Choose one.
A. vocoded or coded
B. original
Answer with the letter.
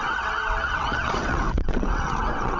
A